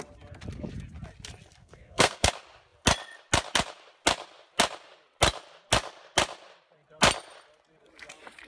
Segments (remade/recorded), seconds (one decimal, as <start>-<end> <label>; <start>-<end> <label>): 0.0-1.6 recorded; 1.6-2.3 remade; 2.3-8.5 recorded